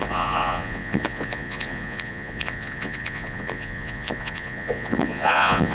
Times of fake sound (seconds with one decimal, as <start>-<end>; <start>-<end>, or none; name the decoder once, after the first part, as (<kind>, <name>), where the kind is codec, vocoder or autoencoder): 0.0-5.7 (vocoder, Vocos)